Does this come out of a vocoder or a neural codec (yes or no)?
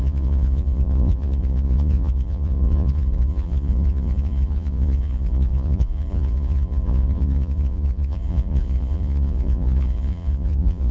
yes